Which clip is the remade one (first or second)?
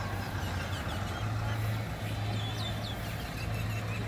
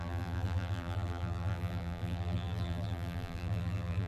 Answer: second